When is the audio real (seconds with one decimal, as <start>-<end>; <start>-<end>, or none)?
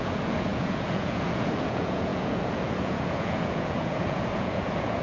none